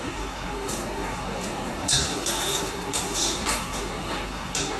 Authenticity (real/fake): fake